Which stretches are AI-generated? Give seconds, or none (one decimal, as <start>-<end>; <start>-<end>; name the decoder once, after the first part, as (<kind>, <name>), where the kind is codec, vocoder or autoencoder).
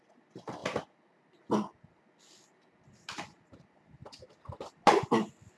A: none